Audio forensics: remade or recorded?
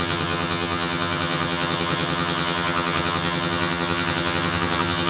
remade